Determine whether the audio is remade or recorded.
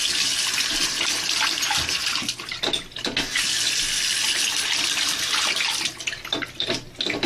recorded